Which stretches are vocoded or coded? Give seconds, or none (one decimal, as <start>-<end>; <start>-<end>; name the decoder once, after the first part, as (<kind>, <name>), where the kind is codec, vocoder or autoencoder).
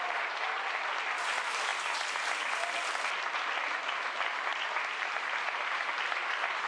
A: 0.0-1.7 (vocoder, BigVGAN v2); 4.4-6.7